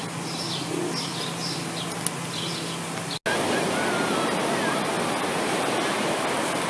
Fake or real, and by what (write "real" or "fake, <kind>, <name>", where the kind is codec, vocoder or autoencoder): real